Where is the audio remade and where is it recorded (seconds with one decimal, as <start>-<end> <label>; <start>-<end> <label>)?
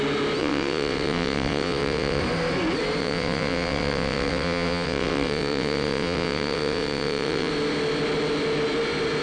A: 0.0-0.4 recorded; 0.4-2.2 remade; 2.2-3.0 recorded; 3.0-7.5 remade; 7.5-9.2 recorded